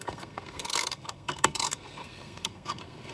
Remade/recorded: remade